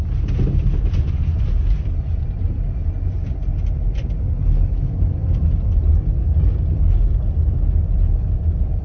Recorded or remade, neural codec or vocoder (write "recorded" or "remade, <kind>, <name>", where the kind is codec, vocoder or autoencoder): recorded